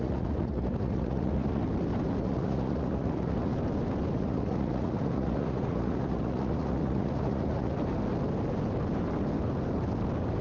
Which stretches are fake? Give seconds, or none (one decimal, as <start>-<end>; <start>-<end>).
0.0-1.6; 2.2-3.5; 4.1-7.7